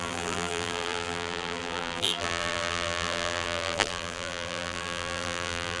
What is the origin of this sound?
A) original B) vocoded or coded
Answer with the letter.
B